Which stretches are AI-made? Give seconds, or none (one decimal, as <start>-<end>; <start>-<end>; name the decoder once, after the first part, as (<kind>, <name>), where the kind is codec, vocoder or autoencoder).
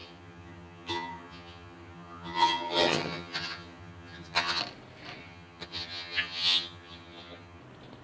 0.0-4.6 (vocoder, HiFi-GAN); 5.2-7.6